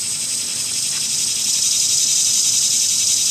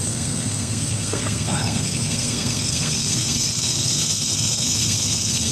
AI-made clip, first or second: second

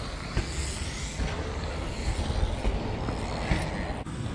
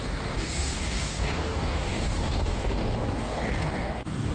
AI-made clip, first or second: second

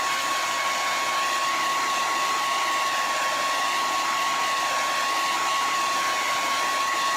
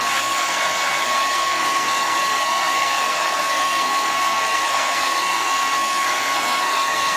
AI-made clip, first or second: second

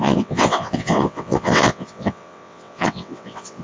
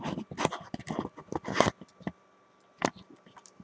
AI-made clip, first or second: first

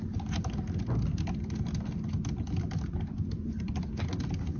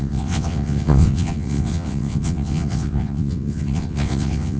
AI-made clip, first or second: second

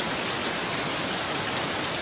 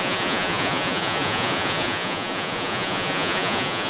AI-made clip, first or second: second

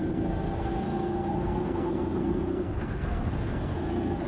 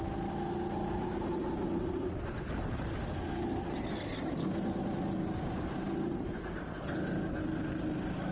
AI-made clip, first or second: first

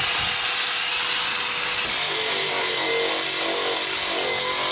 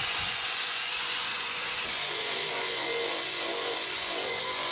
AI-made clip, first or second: second